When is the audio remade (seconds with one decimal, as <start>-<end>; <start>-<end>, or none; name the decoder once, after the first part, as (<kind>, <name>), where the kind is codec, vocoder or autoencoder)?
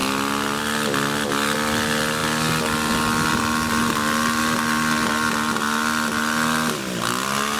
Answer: none